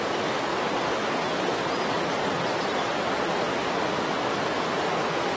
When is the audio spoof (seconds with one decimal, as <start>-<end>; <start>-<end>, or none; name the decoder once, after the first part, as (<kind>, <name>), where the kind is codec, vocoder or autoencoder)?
0.5-1.0 (vocoder, BigVGAN v2)